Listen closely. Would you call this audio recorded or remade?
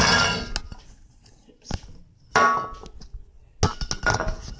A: recorded